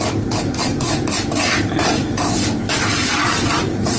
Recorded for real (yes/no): yes